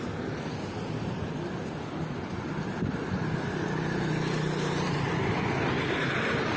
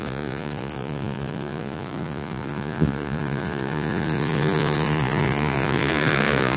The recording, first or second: first